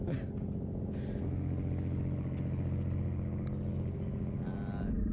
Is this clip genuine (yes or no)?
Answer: yes